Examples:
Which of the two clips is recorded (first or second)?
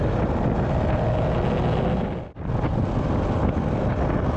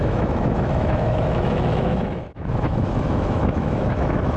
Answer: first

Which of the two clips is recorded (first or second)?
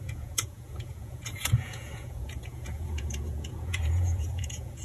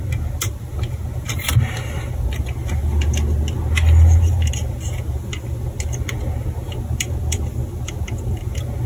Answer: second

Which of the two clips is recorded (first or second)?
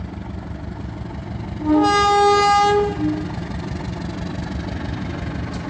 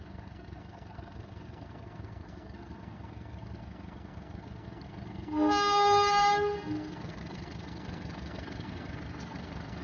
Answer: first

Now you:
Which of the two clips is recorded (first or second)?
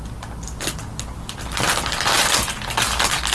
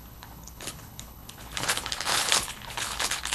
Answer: first